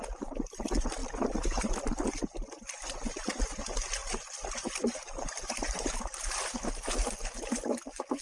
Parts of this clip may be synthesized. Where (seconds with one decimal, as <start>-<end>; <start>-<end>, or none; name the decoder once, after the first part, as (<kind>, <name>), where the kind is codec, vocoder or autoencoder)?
1.0-1.7 (vocoder, BigVGAN v2); 4.0-6.2